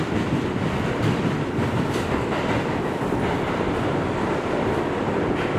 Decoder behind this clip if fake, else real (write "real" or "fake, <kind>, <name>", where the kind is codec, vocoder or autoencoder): real